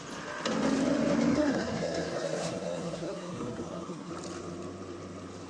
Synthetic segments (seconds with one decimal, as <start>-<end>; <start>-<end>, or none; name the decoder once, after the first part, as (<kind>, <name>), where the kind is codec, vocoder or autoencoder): 1.3-4.1 (codec, SNAC)

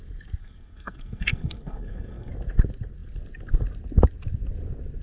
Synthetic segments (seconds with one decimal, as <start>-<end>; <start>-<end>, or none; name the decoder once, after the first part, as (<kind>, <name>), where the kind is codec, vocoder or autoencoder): 0.4-2.3 (codec, SNAC)

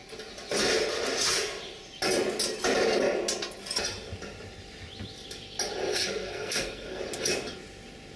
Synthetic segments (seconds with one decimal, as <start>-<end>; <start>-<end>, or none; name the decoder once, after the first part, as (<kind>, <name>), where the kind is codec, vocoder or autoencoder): 5.9-7.0 (codec, SNAC)

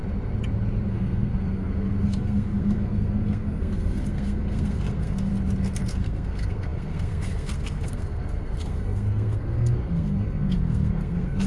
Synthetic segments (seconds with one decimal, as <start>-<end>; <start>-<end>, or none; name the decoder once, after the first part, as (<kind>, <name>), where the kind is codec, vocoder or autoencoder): 0.9-5.3 (codec, SNAC); 5.8-11.5

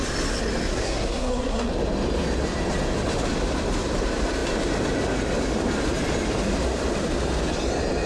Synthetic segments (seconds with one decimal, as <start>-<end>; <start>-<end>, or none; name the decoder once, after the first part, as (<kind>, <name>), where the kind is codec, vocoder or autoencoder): 0.7-1.7 (codec, SNAC)

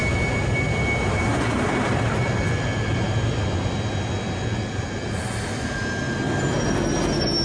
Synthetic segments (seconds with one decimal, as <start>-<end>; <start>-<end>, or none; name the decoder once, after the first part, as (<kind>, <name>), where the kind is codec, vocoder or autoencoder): none

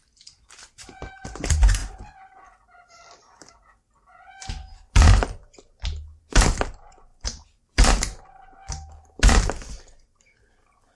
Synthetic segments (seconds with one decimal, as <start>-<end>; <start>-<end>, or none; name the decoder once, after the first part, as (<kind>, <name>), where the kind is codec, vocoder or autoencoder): none

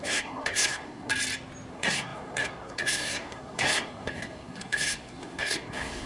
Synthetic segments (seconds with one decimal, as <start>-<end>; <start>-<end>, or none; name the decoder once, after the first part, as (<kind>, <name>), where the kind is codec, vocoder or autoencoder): 0.0-1.1 (codec, SNAC); 1.7-6.1